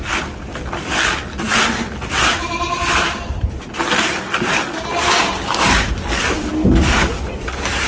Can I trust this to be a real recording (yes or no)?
yes